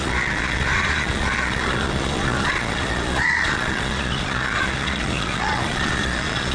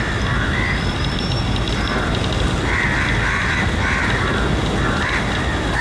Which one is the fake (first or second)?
first